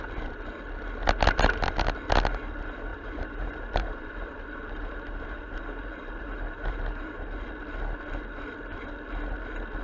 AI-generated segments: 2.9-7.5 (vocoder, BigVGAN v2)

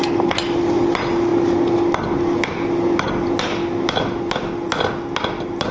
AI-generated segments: none

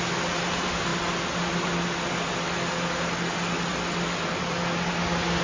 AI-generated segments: none

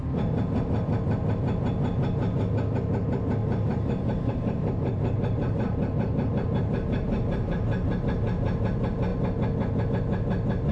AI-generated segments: 3.4-8.0 (vocoder, BigVGAN v2)

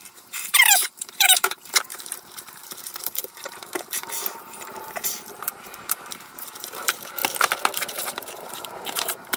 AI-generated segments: 0.0-7.2 (vocoder, BigVGAN v2); 7.8-9.4